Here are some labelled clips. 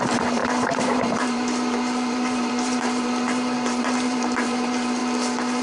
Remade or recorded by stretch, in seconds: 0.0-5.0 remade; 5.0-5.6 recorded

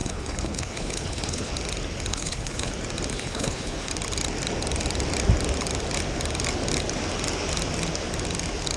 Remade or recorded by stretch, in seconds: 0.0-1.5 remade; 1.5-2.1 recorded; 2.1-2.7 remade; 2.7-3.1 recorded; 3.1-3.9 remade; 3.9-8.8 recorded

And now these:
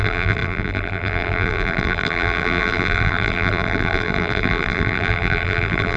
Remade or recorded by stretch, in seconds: 0.0-6.0 remade

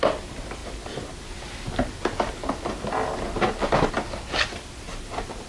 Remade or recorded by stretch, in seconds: 0.0-5.5 recorded